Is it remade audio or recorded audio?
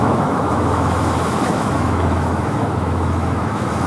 remade